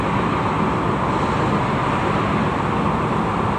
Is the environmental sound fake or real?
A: real